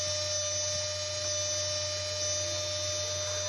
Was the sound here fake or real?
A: real